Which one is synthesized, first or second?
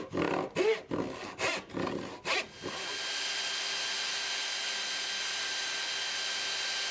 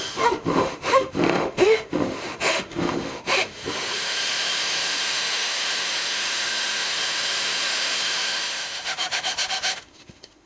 second